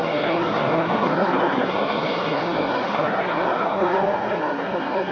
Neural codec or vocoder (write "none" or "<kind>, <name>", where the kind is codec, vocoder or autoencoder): codec, SNAC